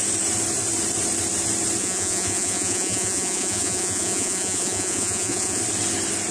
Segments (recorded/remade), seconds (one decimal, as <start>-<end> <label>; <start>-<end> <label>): 0.0-1.8 recorded; 1.8-5.6 remade; 5.6-6.3 recorded